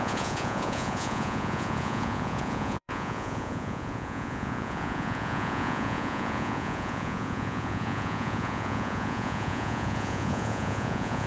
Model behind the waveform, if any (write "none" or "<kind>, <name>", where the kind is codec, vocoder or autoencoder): vocoder, Vocos